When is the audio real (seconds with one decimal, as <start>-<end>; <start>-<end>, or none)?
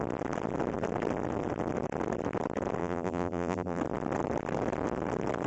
0.0-2.8; 3.8-5.5